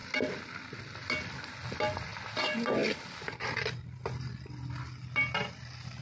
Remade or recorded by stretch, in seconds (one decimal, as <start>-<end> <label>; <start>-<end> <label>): 0.0-6.0 recorded